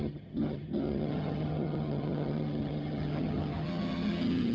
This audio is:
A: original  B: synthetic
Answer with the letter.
B